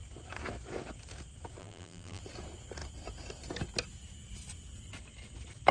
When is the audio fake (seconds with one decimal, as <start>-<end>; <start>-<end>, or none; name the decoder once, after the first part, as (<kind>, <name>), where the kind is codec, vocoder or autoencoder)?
1.6-2.2 (vocoder, BigVGAN v2)